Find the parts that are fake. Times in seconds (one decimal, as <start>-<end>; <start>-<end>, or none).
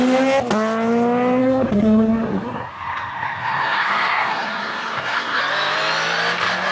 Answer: 1.4-5.4